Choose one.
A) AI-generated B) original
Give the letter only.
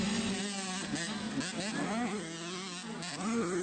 B